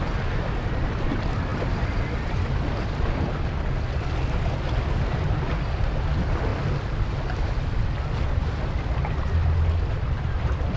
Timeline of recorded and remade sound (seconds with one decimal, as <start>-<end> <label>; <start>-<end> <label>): 0.0-10.8 recorded